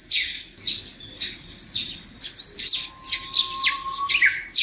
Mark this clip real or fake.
real